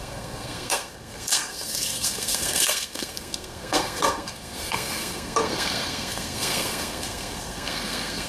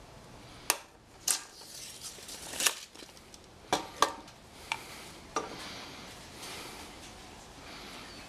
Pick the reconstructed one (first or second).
first